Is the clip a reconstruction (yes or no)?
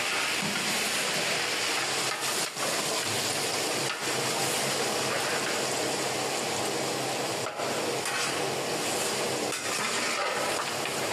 no